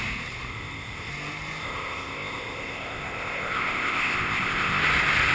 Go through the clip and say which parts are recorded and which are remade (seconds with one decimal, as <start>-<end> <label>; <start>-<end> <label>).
0.0-0.5 recorded; 0.5-1.1 remade; 1.1-1.6 recorded; 1.6-4.8 remade; 4.8-5.3 recorded